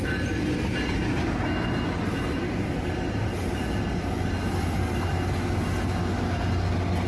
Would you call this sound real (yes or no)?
yes